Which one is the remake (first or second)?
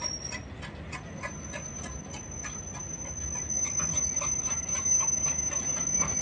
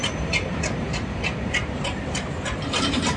second